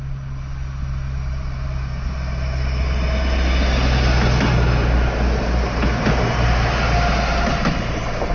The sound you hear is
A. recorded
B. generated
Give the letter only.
A